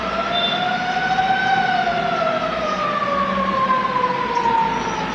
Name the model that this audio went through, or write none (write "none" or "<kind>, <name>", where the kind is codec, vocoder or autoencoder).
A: none